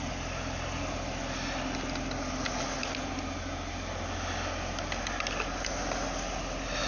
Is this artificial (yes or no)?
no